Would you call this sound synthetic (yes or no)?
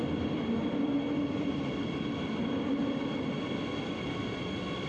no